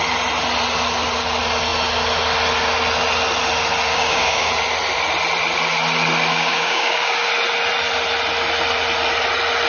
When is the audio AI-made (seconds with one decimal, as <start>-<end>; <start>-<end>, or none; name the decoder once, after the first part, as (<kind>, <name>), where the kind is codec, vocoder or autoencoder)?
3.9-4.5 (codec, DAC); 6.3-7.3